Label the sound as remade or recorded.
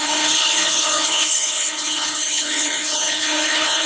remade